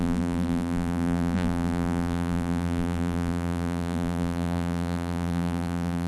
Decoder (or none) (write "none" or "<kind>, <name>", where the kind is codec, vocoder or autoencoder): vocoder, BigVGAN v2